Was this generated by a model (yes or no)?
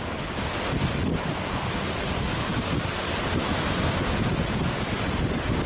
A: yes